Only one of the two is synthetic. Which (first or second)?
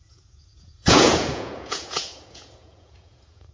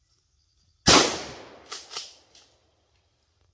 first